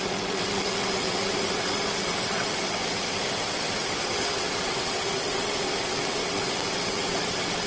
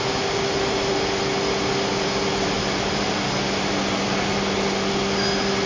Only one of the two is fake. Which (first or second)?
first